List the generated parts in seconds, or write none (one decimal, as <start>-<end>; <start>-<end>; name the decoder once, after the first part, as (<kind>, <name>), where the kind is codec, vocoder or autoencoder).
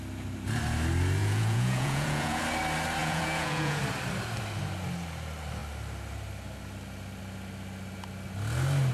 1.2-2.4 (vocoder, Vocos); 3.0-3.8